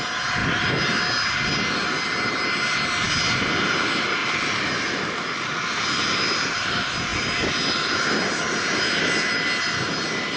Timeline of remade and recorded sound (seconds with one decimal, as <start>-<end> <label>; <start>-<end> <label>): 0.0-10.4 recorded